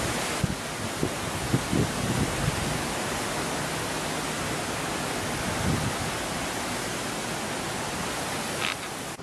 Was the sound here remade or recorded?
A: recorded